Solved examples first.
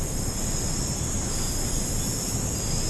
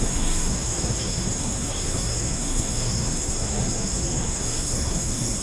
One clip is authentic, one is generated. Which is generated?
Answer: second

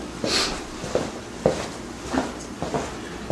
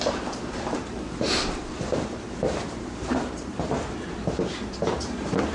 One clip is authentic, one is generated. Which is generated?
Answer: second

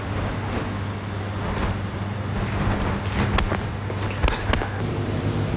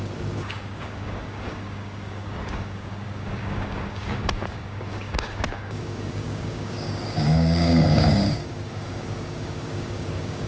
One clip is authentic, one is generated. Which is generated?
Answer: second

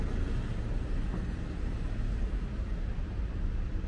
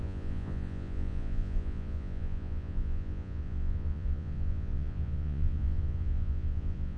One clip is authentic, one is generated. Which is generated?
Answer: second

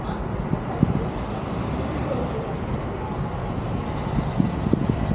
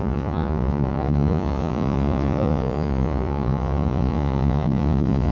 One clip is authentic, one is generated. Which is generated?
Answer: second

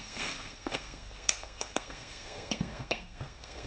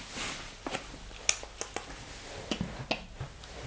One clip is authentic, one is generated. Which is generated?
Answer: first